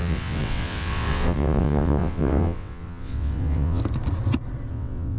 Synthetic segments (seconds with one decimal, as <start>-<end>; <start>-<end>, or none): 0.0-3.8; 4.7-5.2